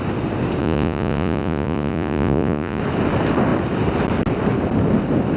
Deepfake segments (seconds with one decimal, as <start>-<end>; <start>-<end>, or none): 0.6-2.8